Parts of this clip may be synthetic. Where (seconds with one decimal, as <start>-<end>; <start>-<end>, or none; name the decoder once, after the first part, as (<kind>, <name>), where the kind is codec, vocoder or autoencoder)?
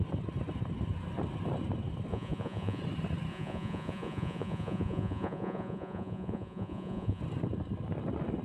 2.1-2.8 (vocoder, Vocos); 3.3-7.2